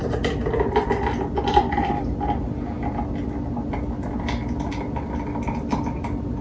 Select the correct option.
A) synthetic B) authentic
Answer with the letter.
B